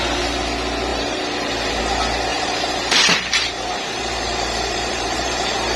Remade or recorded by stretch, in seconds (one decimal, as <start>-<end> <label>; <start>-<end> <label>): 0.0-0.9 recorded; 0.9-1.8 remade; 1.8-2.3 recorded; 2.3-5.8 remade